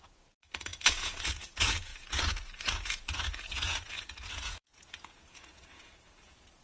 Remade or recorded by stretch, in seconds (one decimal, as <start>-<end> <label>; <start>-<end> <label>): 0.0-6.6 remade